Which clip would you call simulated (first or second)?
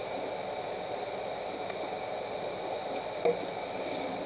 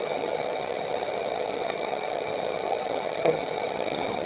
second